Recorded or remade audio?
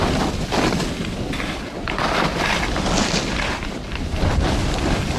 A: recorded